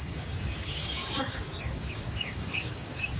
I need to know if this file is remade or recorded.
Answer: remade